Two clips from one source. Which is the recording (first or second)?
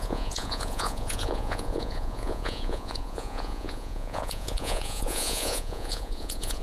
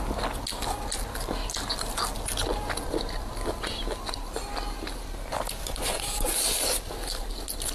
second